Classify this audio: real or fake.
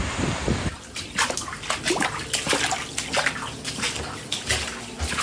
real